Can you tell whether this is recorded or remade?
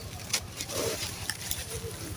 remade